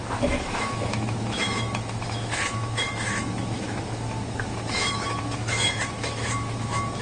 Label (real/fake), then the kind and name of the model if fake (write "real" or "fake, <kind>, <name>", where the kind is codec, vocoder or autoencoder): fake, autoencoder, DAC-VAE